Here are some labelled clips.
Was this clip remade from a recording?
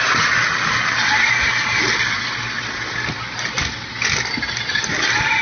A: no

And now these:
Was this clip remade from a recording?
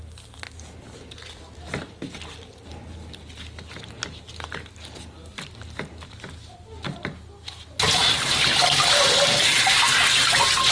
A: no